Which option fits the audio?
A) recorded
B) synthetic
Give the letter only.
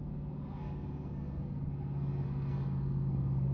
B